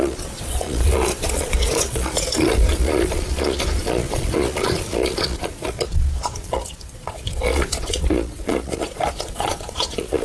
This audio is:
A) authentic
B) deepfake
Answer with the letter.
B